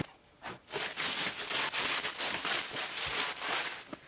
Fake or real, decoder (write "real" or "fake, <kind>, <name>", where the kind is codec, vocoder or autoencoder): real